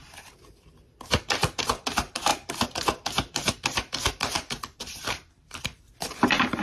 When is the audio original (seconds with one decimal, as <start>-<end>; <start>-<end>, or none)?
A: 0.4-1.7